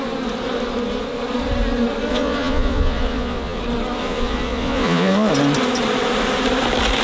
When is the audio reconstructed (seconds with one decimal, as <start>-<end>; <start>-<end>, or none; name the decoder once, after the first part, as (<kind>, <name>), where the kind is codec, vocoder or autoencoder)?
2.1-3.6 (vocoder, Vocos); 4.0-5.3